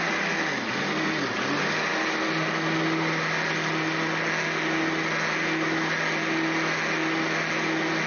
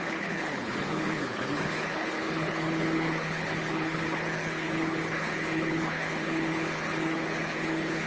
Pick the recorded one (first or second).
first